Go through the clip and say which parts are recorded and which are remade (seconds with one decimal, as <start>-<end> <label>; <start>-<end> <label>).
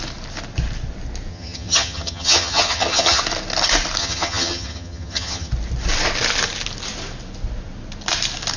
0.0-1.3 recorded; 1.3-3.2 remade; 3.2-4.0 recorded; 4.0-5.5 remade; 5.5-8.6 recorded